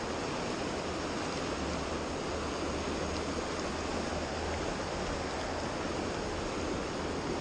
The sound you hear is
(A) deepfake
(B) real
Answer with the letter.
B